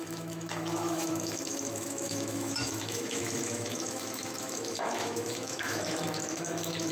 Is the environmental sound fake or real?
fake